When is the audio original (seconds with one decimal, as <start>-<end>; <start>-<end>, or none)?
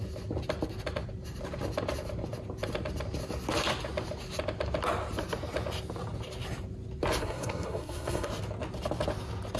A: 0.0-7.2; 8.3-9.6